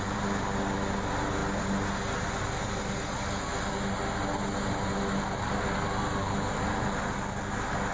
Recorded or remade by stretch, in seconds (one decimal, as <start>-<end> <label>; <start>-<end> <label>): 0.0-7.9 recorded